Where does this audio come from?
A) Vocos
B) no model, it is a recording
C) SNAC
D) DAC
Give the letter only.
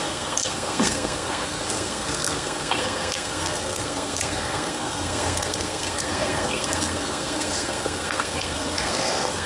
C